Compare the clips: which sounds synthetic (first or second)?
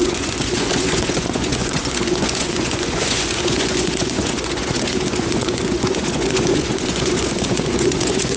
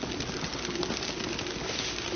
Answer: first